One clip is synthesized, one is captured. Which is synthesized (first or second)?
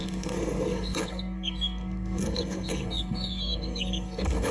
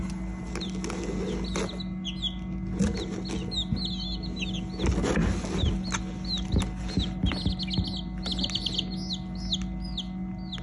first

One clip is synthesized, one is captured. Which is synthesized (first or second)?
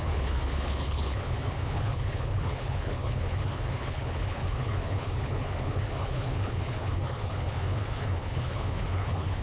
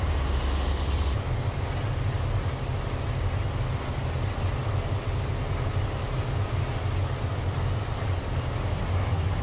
first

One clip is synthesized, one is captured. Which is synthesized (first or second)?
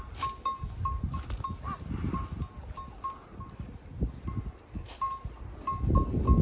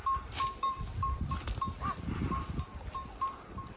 second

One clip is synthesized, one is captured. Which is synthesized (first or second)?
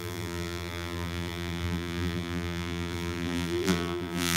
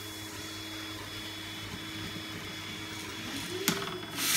first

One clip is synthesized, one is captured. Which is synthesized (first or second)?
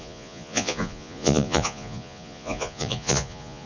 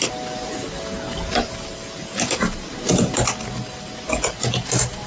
first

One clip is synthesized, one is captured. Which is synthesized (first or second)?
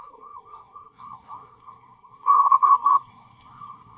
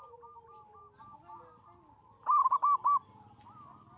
first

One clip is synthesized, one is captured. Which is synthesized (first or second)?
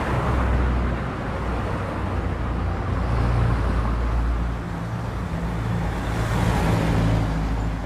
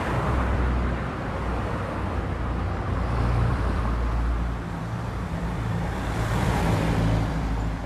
second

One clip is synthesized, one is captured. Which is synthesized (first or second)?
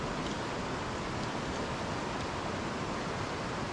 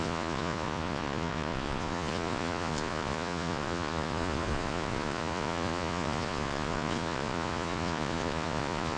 second